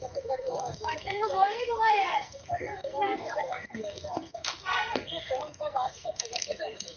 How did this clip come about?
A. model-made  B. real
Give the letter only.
A